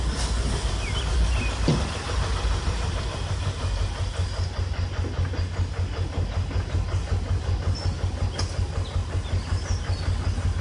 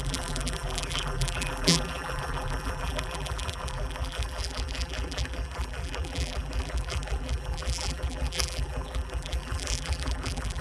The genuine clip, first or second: first